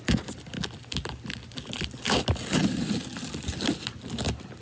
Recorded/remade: recorded